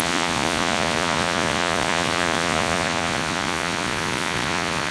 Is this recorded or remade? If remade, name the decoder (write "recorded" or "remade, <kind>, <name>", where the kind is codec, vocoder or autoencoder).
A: remade, vocoder, Vocos